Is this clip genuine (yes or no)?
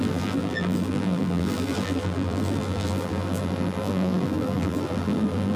no